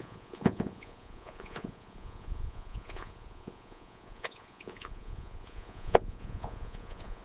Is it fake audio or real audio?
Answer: fake